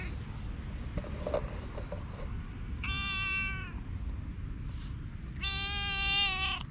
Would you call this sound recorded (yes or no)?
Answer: yes